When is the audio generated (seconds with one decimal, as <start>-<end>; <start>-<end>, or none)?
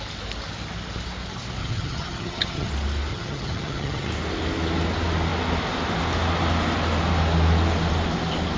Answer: 1.6-2.7; 3.1-4.1